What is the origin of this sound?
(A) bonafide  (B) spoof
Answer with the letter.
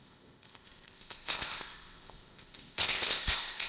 B